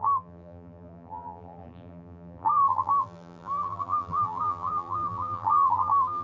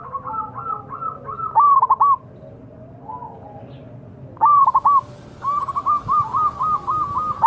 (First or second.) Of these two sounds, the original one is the second